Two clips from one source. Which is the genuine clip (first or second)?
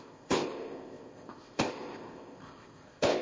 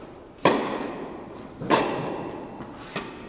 second